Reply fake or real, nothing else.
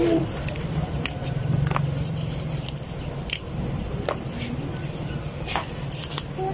fake